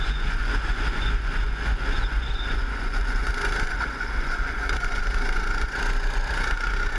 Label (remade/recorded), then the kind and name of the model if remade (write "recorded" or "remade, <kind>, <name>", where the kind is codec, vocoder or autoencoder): remade, vocoder, Vocos